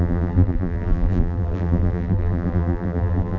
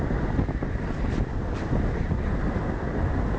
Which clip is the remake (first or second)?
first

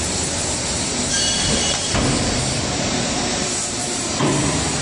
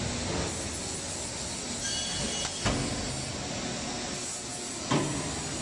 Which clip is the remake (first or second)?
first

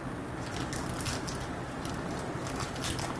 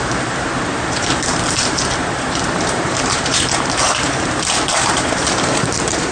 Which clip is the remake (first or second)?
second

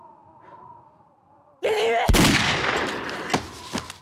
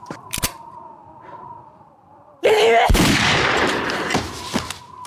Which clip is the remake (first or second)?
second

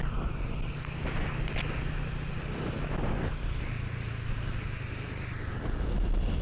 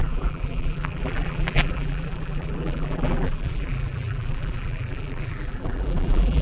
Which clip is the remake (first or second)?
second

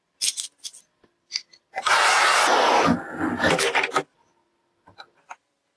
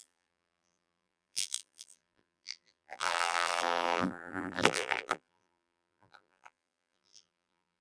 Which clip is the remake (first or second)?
second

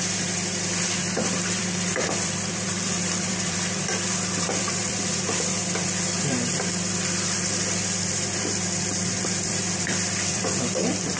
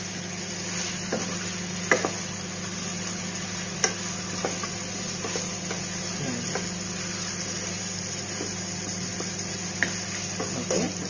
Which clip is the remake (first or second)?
first